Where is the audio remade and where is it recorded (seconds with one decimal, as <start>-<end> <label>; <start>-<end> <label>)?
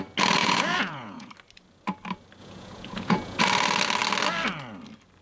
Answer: 0.0-0.4 recorded; 0.4-1.3 remade; 1.3-2.4 recorded; 2.4-3.4 remade; 3.4-5.2 recorded